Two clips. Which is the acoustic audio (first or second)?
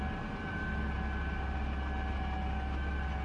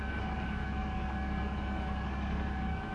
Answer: first